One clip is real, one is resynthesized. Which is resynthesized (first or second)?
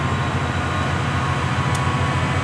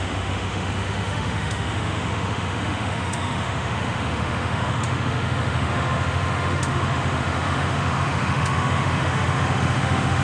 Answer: second